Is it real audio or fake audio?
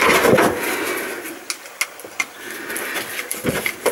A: real